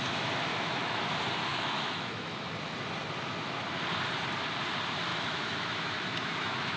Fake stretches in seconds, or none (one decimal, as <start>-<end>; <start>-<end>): 0.5-1.0; 1.5-2.5; 5.1-6.8